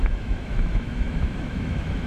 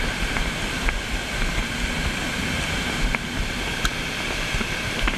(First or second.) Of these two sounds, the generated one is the first